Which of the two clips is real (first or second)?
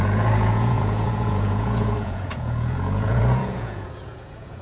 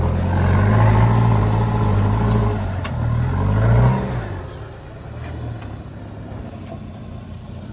second